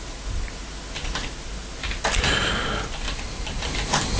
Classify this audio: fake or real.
real